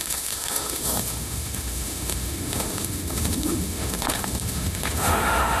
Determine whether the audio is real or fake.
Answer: fake